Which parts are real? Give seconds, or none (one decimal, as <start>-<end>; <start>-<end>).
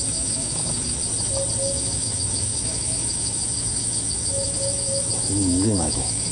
1.0-1.6